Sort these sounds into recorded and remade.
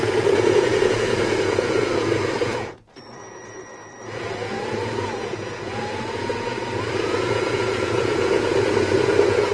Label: remade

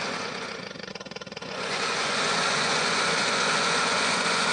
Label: remade